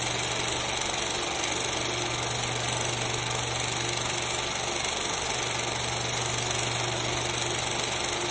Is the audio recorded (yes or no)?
yes